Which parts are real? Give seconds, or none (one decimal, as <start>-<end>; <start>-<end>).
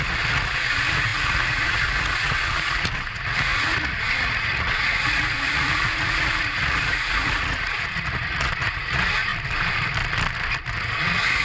9.3-10.7